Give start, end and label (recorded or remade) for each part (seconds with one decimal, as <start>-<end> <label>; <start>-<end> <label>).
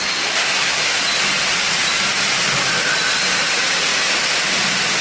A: 0.0-0.4 recorded; 0.4-1.0 remade; 1.0-5.0 recorded